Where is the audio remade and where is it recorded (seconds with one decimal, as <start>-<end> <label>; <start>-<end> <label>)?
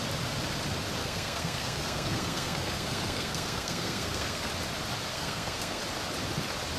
0.0-1.0 recorded; 1.0-4.5 remade; 4.5-5.1 recorded; 5.1-5.8 remade; 5.8-6.8 recorded